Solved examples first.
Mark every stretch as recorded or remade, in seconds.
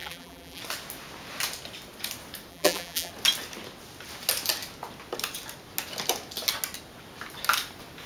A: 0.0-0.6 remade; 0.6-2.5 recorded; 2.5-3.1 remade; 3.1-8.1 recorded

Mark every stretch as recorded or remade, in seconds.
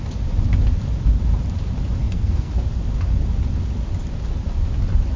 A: 0.0-2.0 recorded; 2.0-2.5 remade; 2.5-5.2 recorded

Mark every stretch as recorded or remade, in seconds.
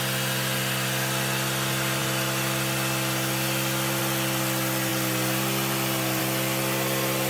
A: 0.0-7.3 recorded